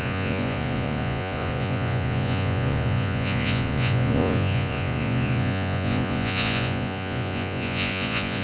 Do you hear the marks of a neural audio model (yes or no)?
yes